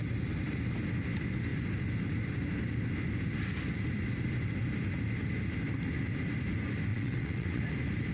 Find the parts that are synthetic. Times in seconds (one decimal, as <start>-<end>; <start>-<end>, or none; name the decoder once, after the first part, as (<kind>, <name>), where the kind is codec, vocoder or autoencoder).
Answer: 6.9-7.6 (vocoder, WaveNeXt)